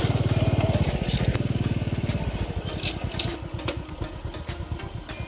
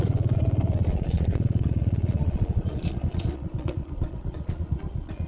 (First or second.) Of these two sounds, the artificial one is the second